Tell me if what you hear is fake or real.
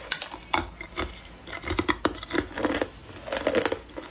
real